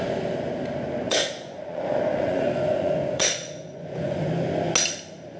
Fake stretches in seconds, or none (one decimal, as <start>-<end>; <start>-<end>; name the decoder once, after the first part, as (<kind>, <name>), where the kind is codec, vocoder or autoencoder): 1.1-4.3 (vocoder, Vocos)